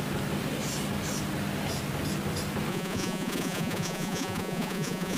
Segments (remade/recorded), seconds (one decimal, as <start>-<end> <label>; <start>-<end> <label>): 0.0-2.7 recorded; 2.7-5.2 remade